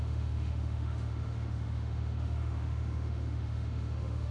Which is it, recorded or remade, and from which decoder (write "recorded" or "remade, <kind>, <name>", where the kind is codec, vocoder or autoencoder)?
remade, autoencoder, DAC-VAE